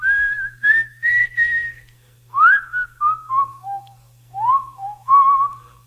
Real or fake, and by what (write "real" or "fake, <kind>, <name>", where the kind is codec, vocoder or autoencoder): fake, codec, SNAC